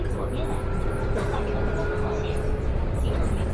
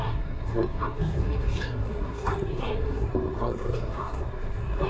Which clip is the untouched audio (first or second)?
first